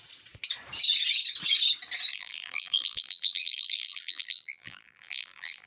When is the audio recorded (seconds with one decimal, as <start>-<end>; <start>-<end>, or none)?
0.0-2.1